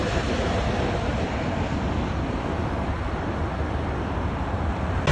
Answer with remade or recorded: recorded